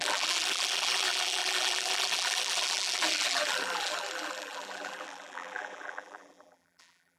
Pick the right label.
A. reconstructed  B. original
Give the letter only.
A